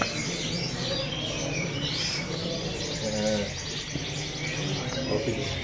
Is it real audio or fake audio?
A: real